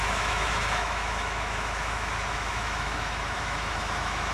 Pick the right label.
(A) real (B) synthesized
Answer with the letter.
B